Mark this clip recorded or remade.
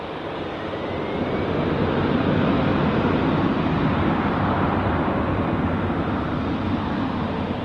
recorded